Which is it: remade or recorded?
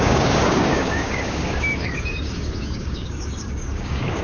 remade